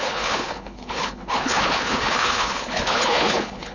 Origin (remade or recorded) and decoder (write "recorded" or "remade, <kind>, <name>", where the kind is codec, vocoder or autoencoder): remade, codec, HILCodec